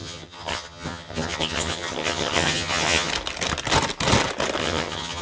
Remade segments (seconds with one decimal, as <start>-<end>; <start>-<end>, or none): 0.0-3.1; 4.6-5.2

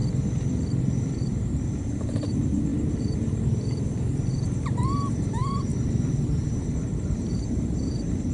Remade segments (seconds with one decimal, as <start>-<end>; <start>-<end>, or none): 0.8-8.3

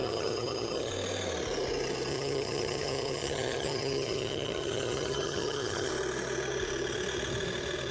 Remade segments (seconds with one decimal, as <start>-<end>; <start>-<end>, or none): 0.0-0.9; 2.1-5.9